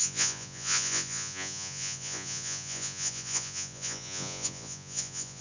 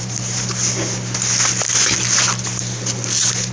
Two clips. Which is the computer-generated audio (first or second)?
first